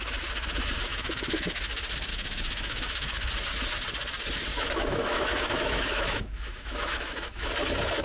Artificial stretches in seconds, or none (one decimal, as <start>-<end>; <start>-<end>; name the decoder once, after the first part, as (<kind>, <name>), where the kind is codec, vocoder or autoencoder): 0.9-1.6 (autoencoder, DAC-VAE); 2.1-3.3; 4.5-7.5